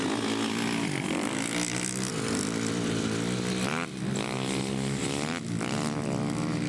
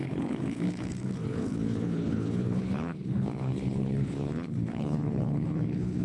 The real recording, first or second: first